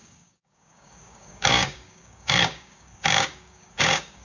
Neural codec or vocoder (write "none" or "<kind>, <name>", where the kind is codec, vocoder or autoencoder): codec, DAC